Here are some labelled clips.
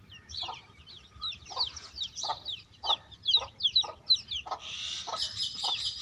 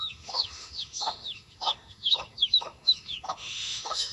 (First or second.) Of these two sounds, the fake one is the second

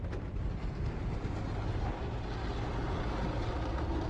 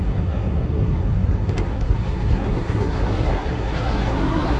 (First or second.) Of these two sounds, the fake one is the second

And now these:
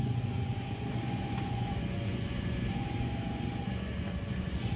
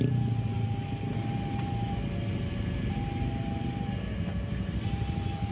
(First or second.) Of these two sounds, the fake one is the first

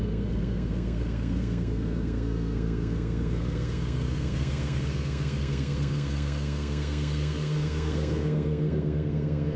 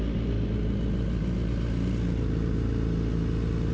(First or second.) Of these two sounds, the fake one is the first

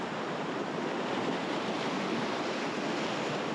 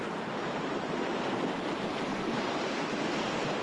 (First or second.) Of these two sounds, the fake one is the second